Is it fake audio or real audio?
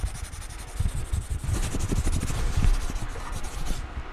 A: real